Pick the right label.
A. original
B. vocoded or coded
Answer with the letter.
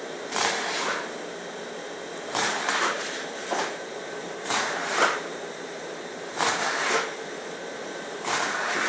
B